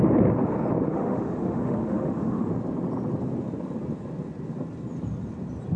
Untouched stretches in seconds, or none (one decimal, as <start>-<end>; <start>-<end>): 0.0-0.9; 2.5-5.8